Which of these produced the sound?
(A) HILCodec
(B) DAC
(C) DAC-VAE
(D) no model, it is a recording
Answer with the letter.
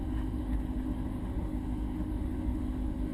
C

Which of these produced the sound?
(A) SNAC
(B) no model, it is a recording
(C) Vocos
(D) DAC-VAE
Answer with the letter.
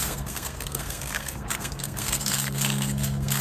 A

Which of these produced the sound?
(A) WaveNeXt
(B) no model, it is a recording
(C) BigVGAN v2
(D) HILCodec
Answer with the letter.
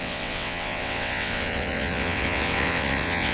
A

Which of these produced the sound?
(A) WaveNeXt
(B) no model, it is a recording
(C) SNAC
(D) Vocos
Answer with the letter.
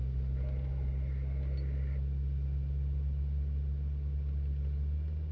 B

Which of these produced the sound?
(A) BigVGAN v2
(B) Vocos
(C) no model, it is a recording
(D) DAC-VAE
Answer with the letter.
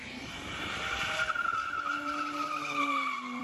A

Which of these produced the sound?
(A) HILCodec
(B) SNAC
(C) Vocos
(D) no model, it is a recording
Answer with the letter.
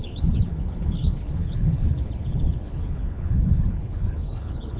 A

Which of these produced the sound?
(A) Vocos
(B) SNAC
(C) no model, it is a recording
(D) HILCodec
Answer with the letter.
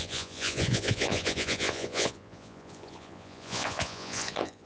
A